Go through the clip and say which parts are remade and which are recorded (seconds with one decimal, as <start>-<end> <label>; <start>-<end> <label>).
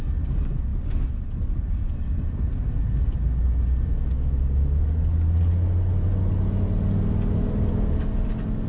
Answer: 0.0-8.7 recorded